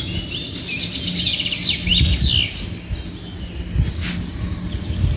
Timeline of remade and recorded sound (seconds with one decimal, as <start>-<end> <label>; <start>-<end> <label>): 0.0-5.2 recorded